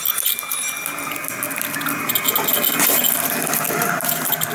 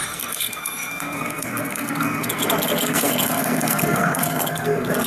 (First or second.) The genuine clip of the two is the first